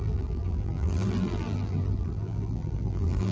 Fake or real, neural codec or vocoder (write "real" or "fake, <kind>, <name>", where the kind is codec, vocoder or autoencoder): fake, vocoder, BigVGAN v2